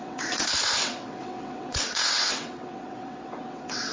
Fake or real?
fake